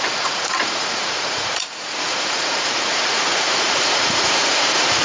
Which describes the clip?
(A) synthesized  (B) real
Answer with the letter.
A